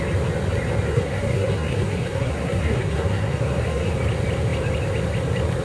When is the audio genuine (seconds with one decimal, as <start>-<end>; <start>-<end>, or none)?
0.0-0.9; 3.9-5.6

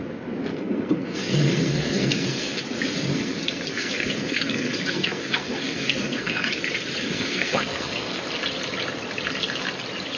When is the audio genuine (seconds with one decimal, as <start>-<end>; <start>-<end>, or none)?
0.0-0.5; 2.6-3.1; 6.5-7.0; 8.2-10.2

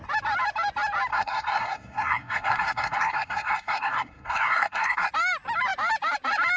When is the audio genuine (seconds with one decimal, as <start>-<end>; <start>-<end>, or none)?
0.0-1.1; 5.1-6.6

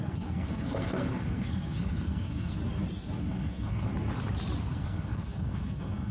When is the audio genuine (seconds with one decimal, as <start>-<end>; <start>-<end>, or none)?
2.6-3.2; 3.9-4.6